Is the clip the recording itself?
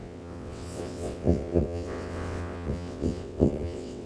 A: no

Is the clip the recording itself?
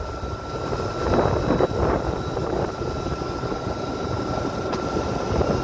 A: yes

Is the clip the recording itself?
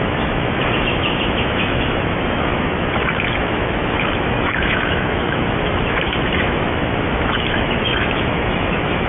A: no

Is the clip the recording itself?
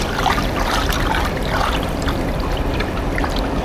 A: no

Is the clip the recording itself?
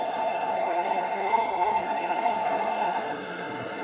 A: no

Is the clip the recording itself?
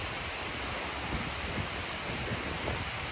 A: yes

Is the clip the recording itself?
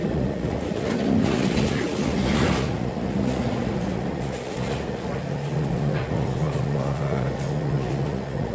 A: no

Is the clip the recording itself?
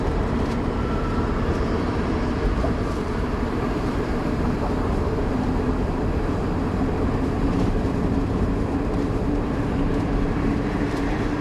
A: no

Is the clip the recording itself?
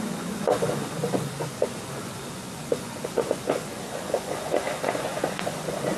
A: no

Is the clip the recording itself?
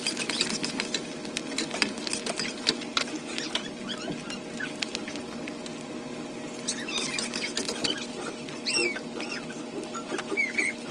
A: yes